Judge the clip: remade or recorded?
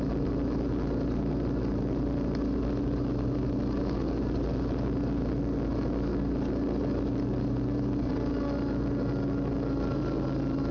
recorded